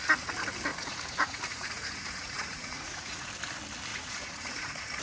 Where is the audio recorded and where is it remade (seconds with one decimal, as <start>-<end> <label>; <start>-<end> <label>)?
0.0-0.7 recorded; 0.7-3.3 remade; 3.3-3.9 recorded; 3.9-5.0 remade

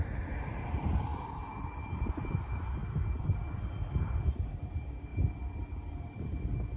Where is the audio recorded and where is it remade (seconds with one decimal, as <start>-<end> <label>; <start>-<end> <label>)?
0.0-2.8 remade; 2.8-4.5 recorded; 4.5-5.1 remade; 5.1-6.0 recorded; 6.0-6.8 remade

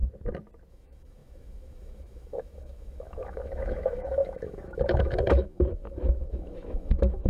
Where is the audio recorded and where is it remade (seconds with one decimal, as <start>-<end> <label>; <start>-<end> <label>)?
0.0-0.7 recorded; 0.7-7.3 remade

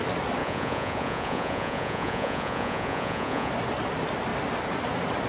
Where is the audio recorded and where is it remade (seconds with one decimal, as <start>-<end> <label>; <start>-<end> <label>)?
0.0-0.4 recorded; 0.4-3.5 remade; 3.5-5.3 recorded

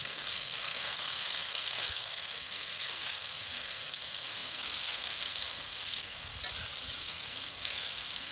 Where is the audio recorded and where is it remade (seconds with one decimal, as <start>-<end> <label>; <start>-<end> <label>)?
0.0-6.3 remade; 6.3-7.0 recorded; 7.0-8.3 remade